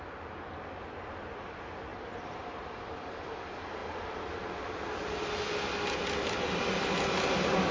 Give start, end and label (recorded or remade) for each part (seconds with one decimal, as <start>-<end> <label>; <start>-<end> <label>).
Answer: 0.0-1.9 recorded; 1.9-2.6 remade; 2.6-7.7 recorded